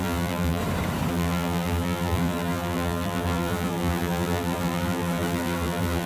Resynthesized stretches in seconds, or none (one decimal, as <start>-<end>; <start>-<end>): 0.0-0.6; 1.1-6.1